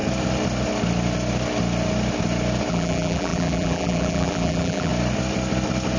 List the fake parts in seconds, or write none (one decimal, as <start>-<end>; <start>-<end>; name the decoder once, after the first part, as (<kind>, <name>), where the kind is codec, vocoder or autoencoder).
2.7-4.9 (vocoder, BigVGAN v2)